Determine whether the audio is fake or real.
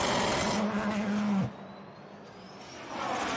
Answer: real